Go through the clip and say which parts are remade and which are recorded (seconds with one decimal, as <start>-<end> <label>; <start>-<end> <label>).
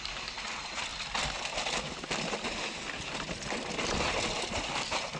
0.0-0.9 recorded; 0.9-2.8 remade; 2.8-5.2 recorded